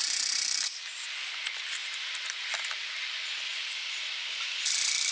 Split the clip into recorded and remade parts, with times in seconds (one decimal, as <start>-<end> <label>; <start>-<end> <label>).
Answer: 0.0-1.8 recorded; 1.8-2.9 remade; 2.9-3.5 recorded; 3.5-4.1 remade; 4.1-5.1 recorded

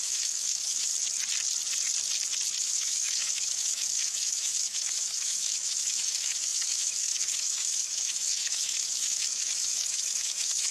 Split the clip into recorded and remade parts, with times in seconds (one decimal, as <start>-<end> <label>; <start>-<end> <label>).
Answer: 0.0-0.9 remade; 0.9-2.6 recorded; 2.6-10.7 remade

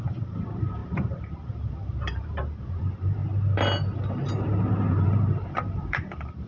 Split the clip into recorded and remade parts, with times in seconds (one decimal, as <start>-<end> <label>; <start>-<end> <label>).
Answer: 0.0-3.2 remade; 3.2-4.9 recorded; 4.9-6.5 remade

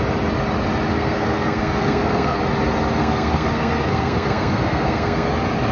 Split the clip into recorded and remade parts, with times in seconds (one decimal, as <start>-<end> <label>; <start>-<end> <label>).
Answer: 0.0-0.9 recorded; 0.9-2.4 remade; 2.4-3.0 recorded; 3.0-5.3 remade; 5.3-5.7 recorded

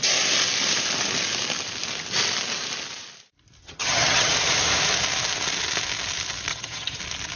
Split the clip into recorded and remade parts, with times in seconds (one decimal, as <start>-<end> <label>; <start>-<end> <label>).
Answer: 0.0-3.6 recorded; 3.6-4.3 remade; 4.3-6.5 recorded; 6.5-7.0 remade; 7.0-7.4 recorded

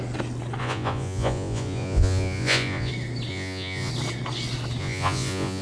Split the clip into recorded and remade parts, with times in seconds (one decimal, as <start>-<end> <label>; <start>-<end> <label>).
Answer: 0.0-0.6 recorded; 0.6-2.9 remade; 2.9-3.3 recorded; 3.3-3.9 remade; 3.9-4.8 recorded; 4.8-5.6 remade

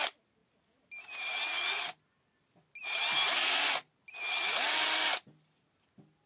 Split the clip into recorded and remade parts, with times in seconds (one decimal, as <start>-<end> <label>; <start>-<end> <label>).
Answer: 0.0-6.3 recorded